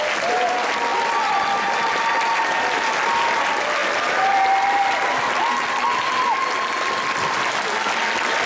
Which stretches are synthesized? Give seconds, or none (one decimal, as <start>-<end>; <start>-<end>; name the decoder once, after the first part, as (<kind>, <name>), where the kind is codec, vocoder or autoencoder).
none